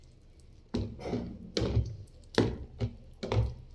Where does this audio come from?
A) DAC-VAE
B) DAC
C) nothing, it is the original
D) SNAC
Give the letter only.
C